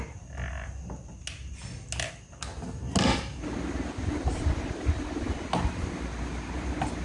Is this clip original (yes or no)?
yes